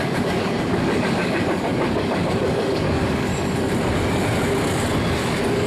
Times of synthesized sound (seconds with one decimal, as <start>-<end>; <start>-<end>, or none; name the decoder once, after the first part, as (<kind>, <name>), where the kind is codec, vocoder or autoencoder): 0.0-3.3 (codec, DAC); 5.2-5.7